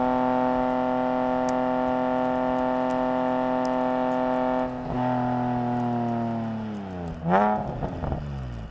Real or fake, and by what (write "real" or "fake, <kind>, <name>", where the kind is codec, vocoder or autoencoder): real